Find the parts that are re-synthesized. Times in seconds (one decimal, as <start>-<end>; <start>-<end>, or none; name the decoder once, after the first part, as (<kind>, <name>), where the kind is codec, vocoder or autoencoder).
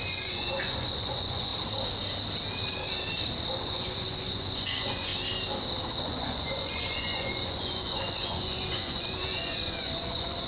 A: 0.0-1.5 (vocoder, Vocos); 3.5-5.1; 6.0-10.5